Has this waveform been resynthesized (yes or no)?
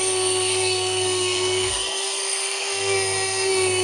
yes